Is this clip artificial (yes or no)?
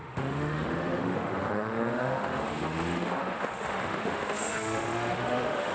yes